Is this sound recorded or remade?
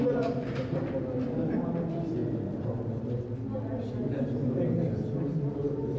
recorded